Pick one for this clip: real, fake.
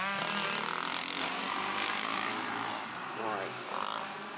real